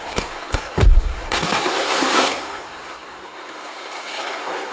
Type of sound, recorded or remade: remade